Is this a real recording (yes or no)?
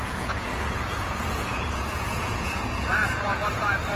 no